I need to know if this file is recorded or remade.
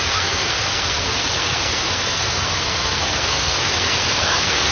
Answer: remade